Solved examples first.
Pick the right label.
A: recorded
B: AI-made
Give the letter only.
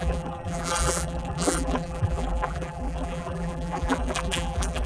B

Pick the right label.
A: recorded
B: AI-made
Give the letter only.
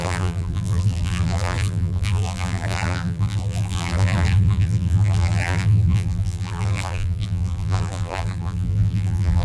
B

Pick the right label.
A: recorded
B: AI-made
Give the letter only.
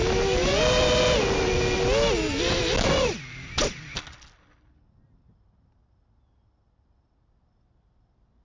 A